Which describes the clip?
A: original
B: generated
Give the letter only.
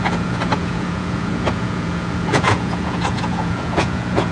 B